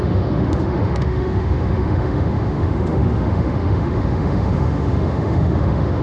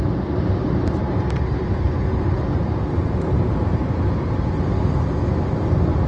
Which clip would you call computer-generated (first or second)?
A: first